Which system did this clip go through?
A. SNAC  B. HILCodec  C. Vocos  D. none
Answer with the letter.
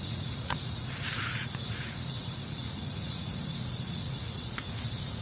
C